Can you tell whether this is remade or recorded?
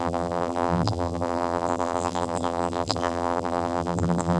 remade